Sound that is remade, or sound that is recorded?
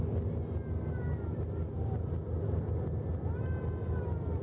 recorded